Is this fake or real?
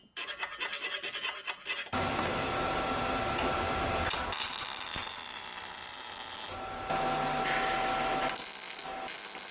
real